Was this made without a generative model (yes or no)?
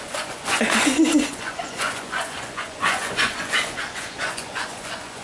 no